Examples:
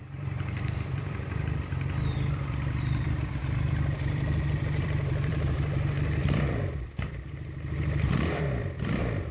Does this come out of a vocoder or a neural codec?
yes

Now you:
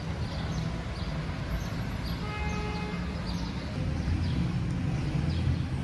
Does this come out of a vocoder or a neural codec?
no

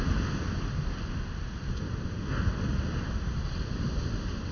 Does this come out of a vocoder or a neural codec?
no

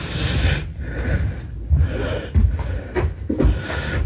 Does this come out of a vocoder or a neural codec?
no